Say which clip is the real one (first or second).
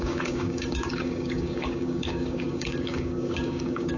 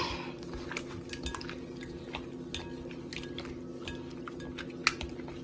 second